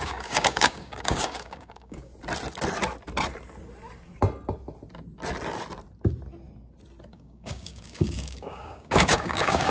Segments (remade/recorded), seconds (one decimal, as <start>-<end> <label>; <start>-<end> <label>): 0.0-2.1 remade; 2.1-7.1 recorded; 7.1-9.7 remade

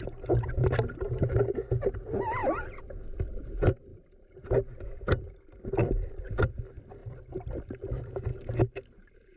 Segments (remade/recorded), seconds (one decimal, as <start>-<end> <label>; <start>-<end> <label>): 0.0-7.0 recorded; 7.0-7.6 remade; 7.6-9.4 recorded